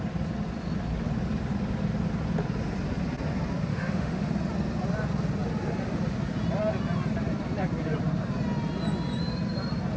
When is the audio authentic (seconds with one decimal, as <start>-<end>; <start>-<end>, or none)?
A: 0.0-3.7; 4.3-10.0